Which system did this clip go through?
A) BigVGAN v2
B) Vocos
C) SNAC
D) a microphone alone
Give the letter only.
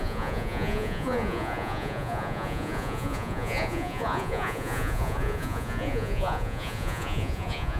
B